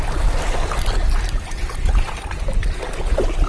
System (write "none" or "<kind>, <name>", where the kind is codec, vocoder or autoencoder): none